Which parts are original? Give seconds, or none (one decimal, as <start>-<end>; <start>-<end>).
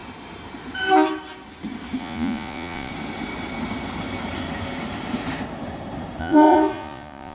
0.0-2.0; 2.9-6.2